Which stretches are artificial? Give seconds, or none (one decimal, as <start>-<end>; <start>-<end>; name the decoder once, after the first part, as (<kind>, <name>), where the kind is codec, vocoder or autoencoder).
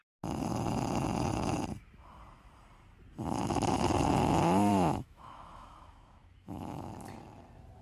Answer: 4.7-6.9 (autoencoder, DAC-VAE)